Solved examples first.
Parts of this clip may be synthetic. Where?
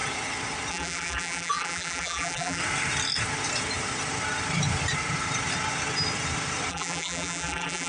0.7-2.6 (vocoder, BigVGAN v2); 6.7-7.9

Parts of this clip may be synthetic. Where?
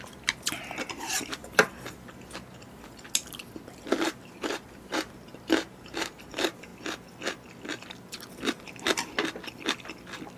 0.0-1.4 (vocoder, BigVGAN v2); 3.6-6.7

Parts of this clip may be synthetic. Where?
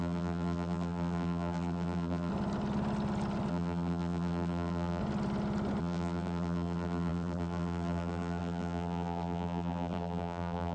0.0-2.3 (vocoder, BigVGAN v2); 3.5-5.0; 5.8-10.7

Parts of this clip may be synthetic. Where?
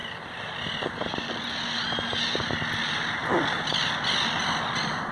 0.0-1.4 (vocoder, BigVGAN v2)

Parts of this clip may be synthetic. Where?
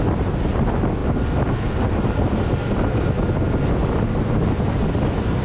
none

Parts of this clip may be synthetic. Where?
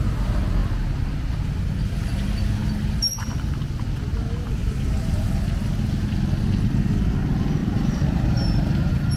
7.6-9.2 (vocoder, BigVGAN v2)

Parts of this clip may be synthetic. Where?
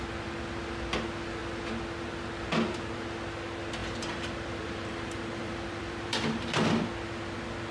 3.8-6.9 (vocoder, BigVGAN v2)